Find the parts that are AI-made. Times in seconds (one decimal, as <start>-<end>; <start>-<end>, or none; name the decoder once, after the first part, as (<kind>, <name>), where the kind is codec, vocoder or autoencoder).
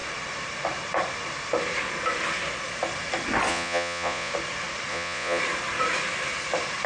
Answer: 3.5-4.3 (vocoder, Vocos); 4.9-5.4